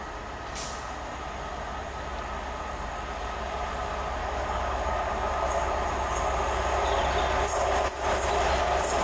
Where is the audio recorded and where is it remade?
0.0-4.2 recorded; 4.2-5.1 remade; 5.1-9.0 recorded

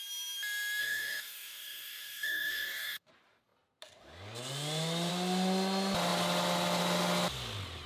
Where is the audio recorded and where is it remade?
0.0-0.8 recorded; 0.8-3.1 remade; 3.1-7.9 recorded

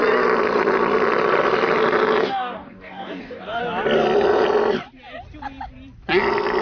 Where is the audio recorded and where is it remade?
0.0-2.2 recorded; 2.2-3.6 remade; 3.6-6.6 recorded

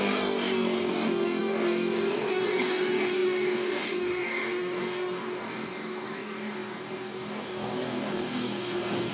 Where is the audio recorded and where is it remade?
0.0-9.1 remade

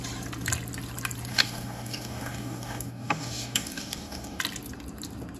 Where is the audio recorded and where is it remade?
0.0-1.3 recorded; 1.3-4.4 remade; 4.4-5.4 recorded

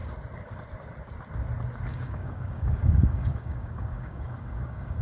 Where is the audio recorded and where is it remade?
0.0-1.9 recorded; 1.9-5.0 remade